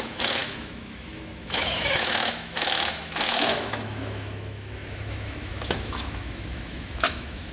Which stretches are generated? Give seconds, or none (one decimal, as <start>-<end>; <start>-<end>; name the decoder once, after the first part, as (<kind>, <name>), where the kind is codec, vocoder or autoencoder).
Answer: 0.0-7.5 (autoencoder, DAC-VAE)

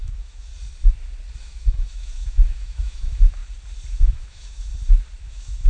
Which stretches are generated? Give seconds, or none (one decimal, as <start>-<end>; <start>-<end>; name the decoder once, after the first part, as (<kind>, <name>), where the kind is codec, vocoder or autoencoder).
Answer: 0.0-0.5 (autoencoder, DAC-VAE); 1.4-3.4; 3.9-4.7; 5.2-5.7

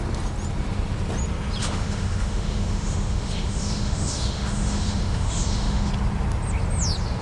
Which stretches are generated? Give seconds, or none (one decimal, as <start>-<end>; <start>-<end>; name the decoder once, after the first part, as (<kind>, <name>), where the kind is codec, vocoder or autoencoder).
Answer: 1.6-5.9 (autoencoder, DAC-VAE)

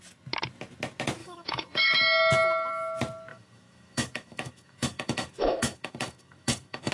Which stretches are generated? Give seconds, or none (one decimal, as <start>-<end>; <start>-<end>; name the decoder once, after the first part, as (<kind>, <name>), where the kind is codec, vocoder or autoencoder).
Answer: 1.2-2.0 (autoencoder, DAC-VAE); 3.3-6.9